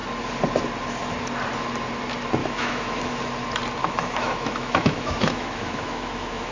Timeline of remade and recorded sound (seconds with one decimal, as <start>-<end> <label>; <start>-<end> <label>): 0.0-2.4 recorded; 2.4-3.2 remade; 3.2-3.8 recorded; 3.8-6.5 remade